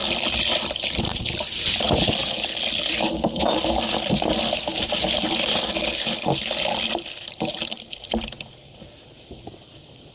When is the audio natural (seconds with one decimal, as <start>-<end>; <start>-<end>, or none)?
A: 0.0-10.1